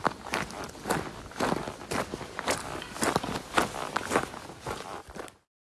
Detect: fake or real real